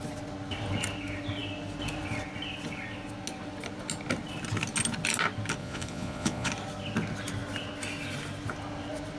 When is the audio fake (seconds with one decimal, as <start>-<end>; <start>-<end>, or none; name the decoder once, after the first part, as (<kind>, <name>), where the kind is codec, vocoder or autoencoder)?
5.6-6.5 (vocoder, Vocos)